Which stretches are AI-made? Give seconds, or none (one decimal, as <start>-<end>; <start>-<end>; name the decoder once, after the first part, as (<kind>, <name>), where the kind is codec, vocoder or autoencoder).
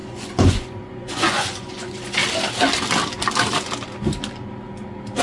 0.0-2.2 (vocoder, Vocos)